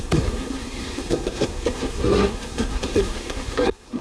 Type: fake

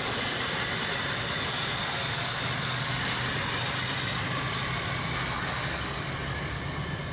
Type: real